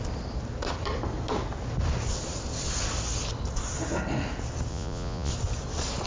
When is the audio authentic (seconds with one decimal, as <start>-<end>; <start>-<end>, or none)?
0.0-4.7; 5.3-6.1